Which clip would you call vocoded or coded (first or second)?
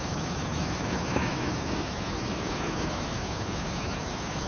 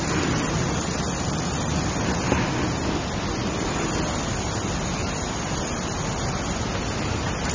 first